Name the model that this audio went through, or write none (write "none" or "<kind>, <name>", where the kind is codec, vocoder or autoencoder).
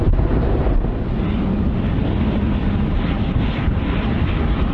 none